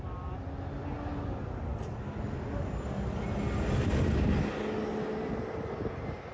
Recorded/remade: recorded